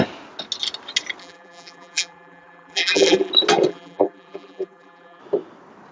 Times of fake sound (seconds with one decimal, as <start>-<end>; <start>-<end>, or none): 1.2-3.3; 3.7-5.2